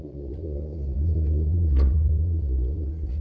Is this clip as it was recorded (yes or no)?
no